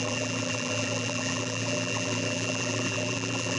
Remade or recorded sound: remade